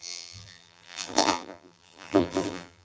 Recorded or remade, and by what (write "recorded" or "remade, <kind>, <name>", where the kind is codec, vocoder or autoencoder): remade, vocoder, BigVGAN v2